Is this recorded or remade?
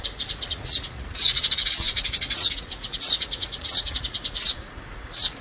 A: remade